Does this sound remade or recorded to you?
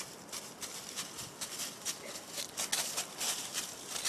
recorded